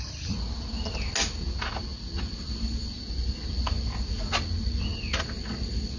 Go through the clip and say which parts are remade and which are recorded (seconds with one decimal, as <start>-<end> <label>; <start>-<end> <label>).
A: 0.0-6.0 recorded